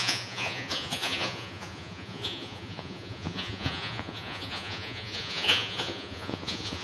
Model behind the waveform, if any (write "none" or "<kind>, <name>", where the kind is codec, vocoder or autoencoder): vocoder, Vocos